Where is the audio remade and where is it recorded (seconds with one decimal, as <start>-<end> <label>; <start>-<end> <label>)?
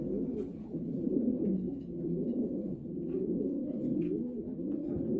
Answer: 0.0-0.5 recorded; 0.5-3.6 remade; 3.6-5.2 recorded